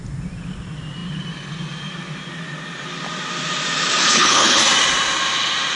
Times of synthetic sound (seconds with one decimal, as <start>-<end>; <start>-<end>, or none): 4.0-4.6